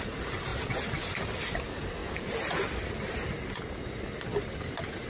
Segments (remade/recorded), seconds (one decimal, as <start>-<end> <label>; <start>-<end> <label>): 0.0-5.1 recorded